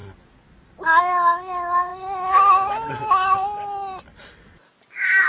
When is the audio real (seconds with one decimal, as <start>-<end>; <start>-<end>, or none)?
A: 0.0-5.3